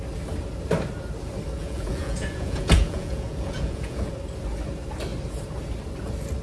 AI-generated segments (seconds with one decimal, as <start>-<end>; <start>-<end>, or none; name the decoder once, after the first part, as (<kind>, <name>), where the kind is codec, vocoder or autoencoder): 1.6-4.1 (vocoder, Vocos)